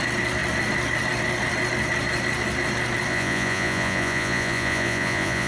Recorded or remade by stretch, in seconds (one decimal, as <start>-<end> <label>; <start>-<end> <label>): 0.0-3.1 recorded; 3.1-5.5 remade